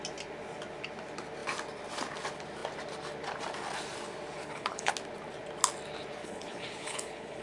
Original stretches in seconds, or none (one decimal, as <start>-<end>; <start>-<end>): 0.0-4.4; 4.9-6.2